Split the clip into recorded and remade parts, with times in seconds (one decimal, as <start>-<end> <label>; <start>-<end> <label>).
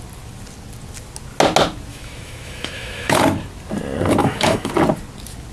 0.0-1.9 recorded; 1.9-3.2 remade; 3.2-4.2 recorded; 4.2-4.7 remade; 4.7-5.5 recorded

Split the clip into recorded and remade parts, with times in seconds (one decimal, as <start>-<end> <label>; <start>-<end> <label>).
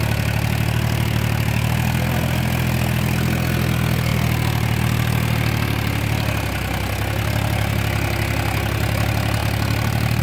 0.0-10.2 recorded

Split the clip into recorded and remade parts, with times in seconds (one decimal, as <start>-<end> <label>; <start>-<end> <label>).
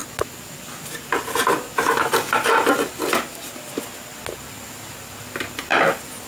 0.0-6.3 recorded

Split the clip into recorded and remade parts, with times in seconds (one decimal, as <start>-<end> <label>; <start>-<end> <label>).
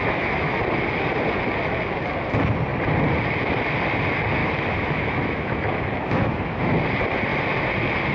0.0-0.6 remade; 0.6-4.4 recorded; 4.4-6.7 remade; 6.7-8.1 recorded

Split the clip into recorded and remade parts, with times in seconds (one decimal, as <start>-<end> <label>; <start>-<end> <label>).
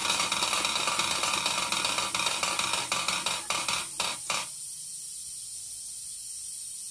0.0-6.9 recorded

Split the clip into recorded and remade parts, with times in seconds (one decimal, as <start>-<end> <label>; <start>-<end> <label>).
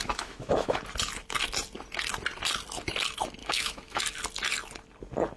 0.0-0.8 remade; 0.8-3.4 recorded; 3.4-4.0 remade; 4.0-5.4 recorded